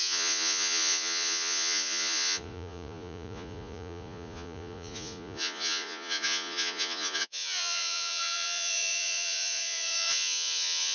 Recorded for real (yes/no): no